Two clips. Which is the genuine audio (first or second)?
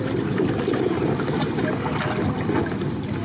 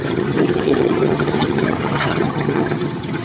first